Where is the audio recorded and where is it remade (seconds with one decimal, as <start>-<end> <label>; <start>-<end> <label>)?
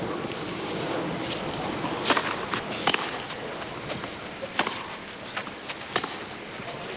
0.0-0.5 recorded; 0.5-1.1 remade; 1.1-7.0 recorded